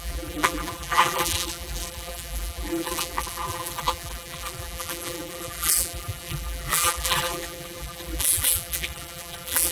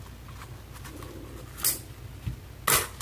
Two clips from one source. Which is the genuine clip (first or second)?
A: second